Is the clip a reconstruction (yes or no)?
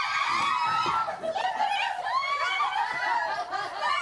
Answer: no